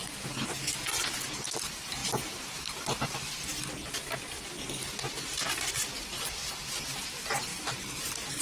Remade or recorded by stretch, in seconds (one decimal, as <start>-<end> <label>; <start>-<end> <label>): 0.0-2.0 recorded; 2.0-2.6 remade; 2.6-7.5 recorded; 7.5-8.4 remade